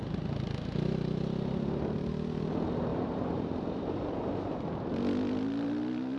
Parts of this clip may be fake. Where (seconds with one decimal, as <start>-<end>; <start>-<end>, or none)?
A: 2.9-4.3